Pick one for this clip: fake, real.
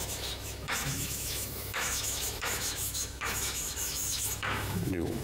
fake